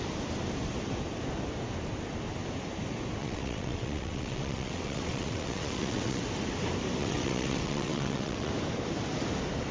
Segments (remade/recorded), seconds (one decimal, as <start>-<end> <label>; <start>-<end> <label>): 0.0-3.2 recorded; 3.2-6.2 remade; 6.2-7.0 recorded; 7.0-8.5 remade; 8.5-9.7 recorded